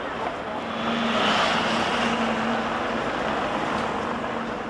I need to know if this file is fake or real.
real